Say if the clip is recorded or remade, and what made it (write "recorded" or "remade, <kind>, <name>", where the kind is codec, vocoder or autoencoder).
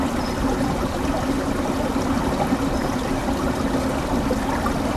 recorded